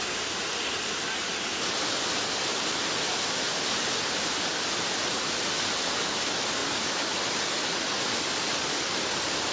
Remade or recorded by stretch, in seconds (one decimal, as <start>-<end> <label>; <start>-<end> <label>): 0.0-9.5 recorded